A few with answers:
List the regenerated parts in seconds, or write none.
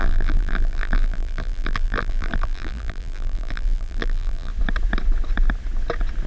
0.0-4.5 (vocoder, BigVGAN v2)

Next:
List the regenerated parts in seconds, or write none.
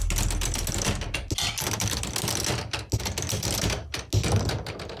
none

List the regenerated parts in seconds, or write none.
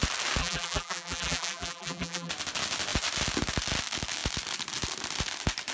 0.4-2.3 (vocoder, BigVGAN v2)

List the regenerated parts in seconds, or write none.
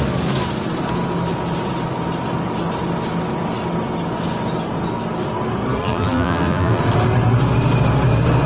5.8-6.8 (vocoder, BigVGAN v2)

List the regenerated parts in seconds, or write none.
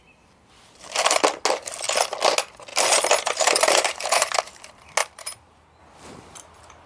2.7-4.4 (vocoder, BigVGAN v2); 5.0-5.8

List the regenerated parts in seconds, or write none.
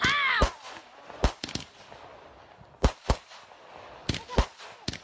none